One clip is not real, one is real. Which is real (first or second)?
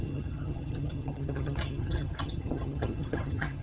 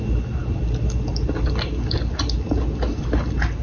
second